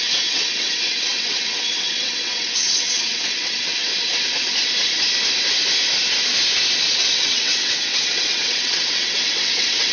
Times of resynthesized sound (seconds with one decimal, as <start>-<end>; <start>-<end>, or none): 0.0-3.9; 6.8-9.9